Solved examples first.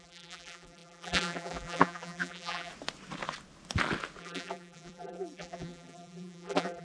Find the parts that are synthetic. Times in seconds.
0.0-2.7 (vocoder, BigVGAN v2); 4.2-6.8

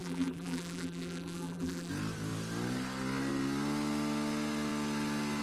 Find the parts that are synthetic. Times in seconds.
0.0-1.9 (vocoder, BigVGAN v2)